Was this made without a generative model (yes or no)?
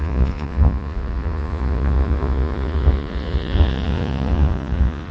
no